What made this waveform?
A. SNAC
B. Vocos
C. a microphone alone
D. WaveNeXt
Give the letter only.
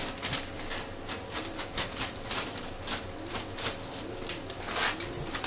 C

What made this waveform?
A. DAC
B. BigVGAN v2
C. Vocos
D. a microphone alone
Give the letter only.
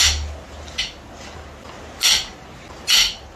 D